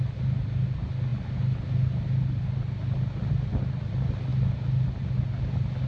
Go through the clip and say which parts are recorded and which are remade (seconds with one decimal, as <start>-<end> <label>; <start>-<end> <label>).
0.0-5.9 recorded